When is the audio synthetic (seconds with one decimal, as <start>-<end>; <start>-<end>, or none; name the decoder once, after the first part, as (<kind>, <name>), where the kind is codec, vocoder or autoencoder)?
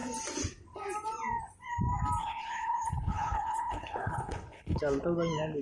2.2-4.8 (codec, HILCodec)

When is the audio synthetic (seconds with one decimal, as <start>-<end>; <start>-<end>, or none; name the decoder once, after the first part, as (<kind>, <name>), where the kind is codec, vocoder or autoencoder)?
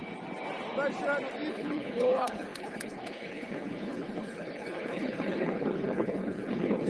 1.5-6.9 (codec, HILCodec)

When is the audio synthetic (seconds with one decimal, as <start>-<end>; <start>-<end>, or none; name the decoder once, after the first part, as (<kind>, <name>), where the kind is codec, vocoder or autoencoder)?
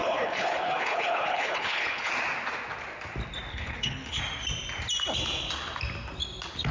0.0-2.1 (codec, HILCodec); 3.5-4.2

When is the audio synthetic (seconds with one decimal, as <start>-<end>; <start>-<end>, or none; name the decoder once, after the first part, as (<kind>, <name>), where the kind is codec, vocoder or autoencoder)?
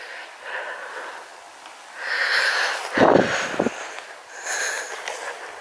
none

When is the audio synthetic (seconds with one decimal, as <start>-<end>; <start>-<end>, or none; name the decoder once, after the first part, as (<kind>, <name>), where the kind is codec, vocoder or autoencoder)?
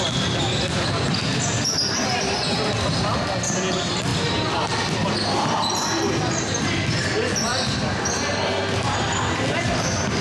none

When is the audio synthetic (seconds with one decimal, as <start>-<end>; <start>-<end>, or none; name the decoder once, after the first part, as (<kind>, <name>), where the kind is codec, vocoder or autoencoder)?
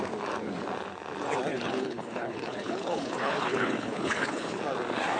1.5-4.6 (codec, HILCodec)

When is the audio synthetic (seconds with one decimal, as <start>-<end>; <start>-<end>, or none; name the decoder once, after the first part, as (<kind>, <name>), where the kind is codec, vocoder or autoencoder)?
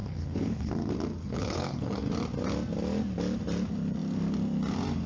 0.0-0.7 (codec, HILCodec); 1.2-2.1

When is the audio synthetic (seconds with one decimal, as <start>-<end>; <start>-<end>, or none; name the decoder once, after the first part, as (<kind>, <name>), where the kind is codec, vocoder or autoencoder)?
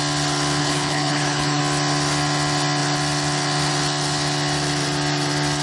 0.6-1.6 (codec, HILCodec)